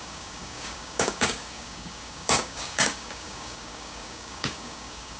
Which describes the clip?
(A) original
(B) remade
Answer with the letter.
B